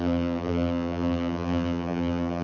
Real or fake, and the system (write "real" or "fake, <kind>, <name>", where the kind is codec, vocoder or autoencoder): fake, vocoder, BigVGAN v2